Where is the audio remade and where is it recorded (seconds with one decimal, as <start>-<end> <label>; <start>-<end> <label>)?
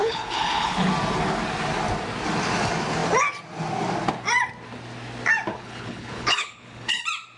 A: 0.0-0.9 remade; 0.9-5.5 recorded; 5.5-7.0 remade; 7.0-7.4 recorded